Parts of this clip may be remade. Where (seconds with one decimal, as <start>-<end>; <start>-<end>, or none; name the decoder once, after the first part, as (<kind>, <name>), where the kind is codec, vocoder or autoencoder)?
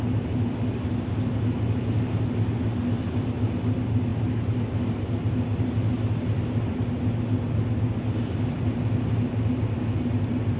none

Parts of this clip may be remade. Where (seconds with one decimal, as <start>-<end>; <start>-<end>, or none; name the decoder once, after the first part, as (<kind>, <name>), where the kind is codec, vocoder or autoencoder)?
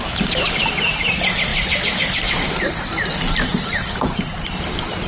none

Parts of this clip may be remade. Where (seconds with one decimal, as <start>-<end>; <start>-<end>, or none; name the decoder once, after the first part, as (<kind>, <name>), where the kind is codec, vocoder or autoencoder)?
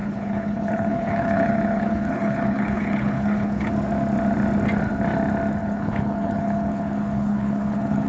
0.0-3.7 (codec, HILCodec); 5.6-8.1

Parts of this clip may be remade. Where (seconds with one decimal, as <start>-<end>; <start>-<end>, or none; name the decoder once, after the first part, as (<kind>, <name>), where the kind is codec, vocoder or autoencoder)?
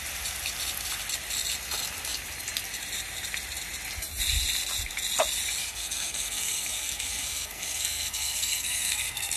5.6-9.4 (codec, SNAC)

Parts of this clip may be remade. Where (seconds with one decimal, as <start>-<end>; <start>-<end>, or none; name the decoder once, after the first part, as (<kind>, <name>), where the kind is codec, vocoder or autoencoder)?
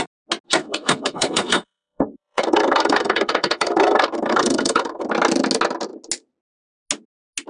0.6-5.1 (codec, SNAC)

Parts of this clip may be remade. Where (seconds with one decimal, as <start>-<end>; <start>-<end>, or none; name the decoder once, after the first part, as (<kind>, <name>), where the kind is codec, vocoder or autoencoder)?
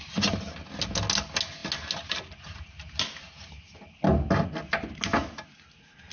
none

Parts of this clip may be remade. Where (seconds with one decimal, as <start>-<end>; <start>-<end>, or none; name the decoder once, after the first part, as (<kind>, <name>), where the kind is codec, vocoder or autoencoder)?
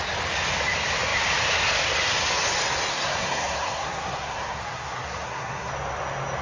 2.9-5.7 (codec, SNAC)